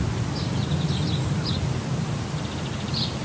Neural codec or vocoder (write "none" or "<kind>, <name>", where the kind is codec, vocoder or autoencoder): none